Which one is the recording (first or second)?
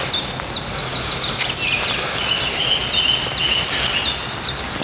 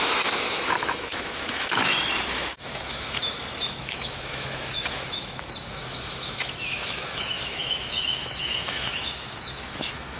first